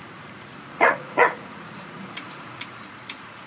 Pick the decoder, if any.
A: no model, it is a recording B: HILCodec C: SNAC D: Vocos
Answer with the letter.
D